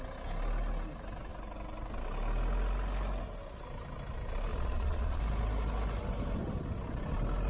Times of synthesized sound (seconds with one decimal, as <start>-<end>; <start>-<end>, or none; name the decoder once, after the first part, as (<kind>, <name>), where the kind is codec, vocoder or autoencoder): 4.5-5.2 (vocoder, Vocos)